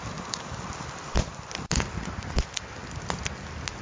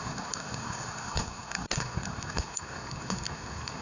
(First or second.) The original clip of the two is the first